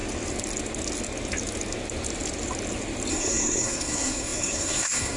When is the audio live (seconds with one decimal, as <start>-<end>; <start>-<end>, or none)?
0.0-3.1